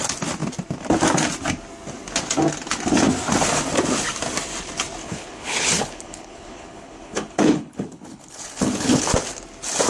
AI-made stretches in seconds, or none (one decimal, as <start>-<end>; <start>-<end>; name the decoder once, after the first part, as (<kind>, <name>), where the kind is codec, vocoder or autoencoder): 5.0-9.1 (codec, HILCodec)